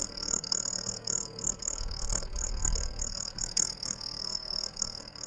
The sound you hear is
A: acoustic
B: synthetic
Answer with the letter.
B